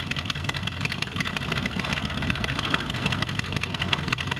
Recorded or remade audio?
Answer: remade